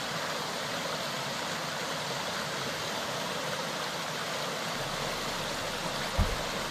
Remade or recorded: recorded